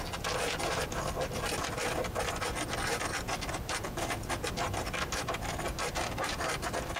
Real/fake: real